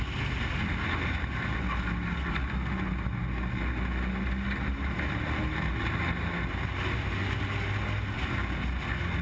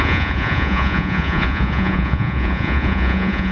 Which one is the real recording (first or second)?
first